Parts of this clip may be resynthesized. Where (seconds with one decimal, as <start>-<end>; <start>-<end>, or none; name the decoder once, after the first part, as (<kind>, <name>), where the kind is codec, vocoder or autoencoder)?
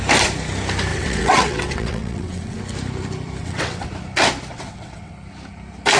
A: 0.9-2.6 (vocoder, WaveNeXt); 3.4-3.9; 4.5-5.1